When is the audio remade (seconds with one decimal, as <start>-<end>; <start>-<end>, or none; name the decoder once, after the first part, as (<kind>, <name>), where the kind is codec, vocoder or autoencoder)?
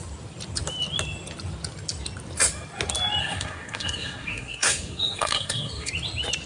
3.2-5.9 (codec, SNAC)